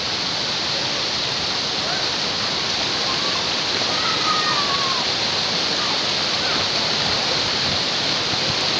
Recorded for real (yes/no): yes